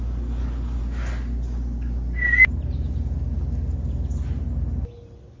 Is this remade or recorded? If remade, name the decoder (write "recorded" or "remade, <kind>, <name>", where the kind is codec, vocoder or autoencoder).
recorded